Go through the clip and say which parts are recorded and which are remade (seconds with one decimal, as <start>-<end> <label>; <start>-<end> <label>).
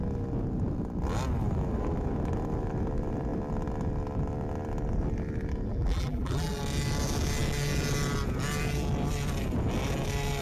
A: 0.0-5.7 recorded; 5.7-6.6 remade; 6.6-10.4 recorded